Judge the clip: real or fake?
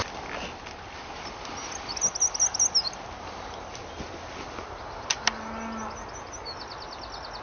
real